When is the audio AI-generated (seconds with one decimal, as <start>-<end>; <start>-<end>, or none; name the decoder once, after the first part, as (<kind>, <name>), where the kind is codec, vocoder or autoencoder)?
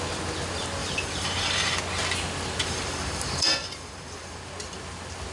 0.8-1.8 (vocoder, BigVGAN v2); 2.6-4.4